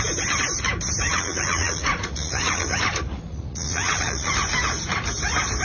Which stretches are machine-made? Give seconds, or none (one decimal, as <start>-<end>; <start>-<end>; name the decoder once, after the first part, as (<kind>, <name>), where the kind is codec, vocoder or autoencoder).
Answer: 1.1-4.3 (vocoder, Vocos)